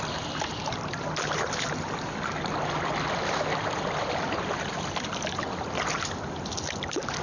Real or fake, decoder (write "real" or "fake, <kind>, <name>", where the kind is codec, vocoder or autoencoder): real